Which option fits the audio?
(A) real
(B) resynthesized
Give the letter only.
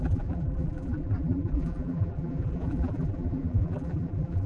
B